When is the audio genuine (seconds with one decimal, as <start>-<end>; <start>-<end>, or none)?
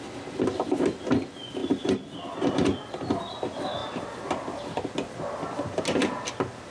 0.0-6.7